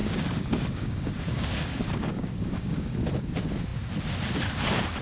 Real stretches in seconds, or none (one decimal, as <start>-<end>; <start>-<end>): 3.0-5.0